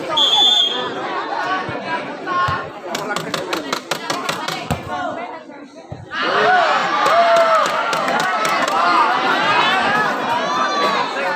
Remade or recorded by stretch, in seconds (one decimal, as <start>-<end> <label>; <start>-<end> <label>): 0.0-6.8 recorded; 6.8-9.6 remade; 9.6-11.4 recorded